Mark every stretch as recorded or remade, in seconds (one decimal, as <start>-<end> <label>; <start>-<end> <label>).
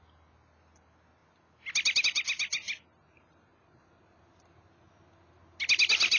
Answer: 0.0-2.5 recorded; 2.5-4.2 remade; 4.2-6.2 recorded